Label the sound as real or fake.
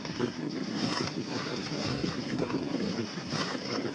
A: fake